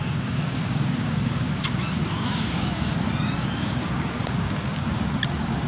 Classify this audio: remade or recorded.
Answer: remade